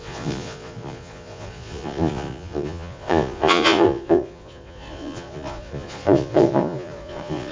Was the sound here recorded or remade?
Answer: remade